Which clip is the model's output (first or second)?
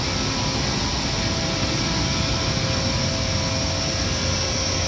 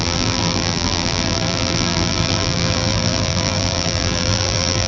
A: second